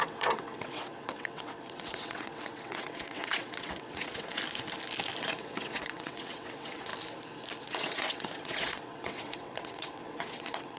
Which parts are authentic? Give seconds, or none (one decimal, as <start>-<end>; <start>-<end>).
4.4-5.2; 6.9-7.6

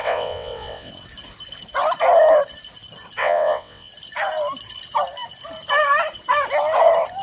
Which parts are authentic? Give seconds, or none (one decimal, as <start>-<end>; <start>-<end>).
0.9-3.2; 3.9-7.2

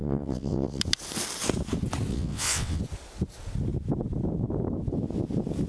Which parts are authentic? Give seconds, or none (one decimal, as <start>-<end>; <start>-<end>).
0.8-2.1; 2.8-5.7

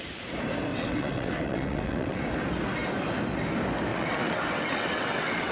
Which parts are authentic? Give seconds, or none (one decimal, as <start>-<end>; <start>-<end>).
0.0-0.7; 2.3-3.9

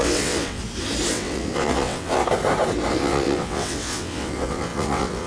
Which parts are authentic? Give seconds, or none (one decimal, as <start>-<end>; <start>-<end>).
0.6-1.1; 2.2-2.9